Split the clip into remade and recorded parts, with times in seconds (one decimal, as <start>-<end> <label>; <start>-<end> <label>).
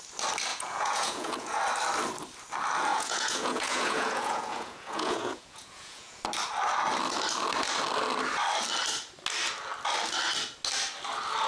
0.0-0.5 recorded; 0.5-1.6 remade; 1.6-2.9 recorded; 2.9-6.2 remade; 6.2-11.5 recorded